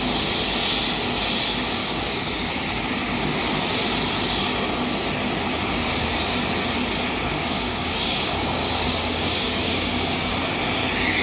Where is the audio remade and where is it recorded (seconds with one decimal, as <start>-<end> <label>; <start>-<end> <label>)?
0.0-1.8 recorded; 1.8-2.6 remade; 2.6-7.3 recorded; 7.3-10.3 remade; 10.3-11.2 recorded